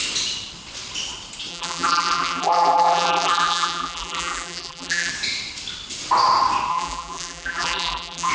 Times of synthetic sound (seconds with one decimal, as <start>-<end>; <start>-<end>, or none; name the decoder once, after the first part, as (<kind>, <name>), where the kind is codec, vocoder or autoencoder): 1.5-5.1 (vocoder, BigVGAN v2); 6.7-8.3